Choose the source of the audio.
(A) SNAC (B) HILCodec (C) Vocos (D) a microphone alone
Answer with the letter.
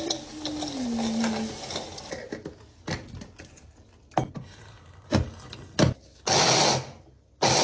D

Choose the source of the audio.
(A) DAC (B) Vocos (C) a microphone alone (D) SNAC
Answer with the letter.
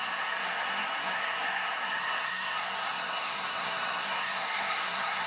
D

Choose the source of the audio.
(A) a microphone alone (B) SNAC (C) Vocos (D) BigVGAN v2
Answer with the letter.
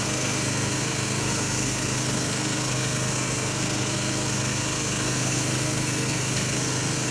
B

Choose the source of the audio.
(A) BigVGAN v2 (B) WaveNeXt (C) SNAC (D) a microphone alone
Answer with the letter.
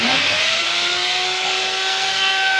C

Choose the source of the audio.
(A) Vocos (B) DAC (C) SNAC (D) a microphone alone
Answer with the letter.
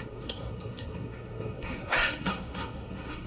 C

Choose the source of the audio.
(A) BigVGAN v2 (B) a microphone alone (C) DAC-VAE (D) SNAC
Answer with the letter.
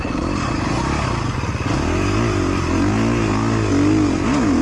B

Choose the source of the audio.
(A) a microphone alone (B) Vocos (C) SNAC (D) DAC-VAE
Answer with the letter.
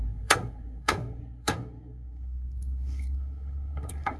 C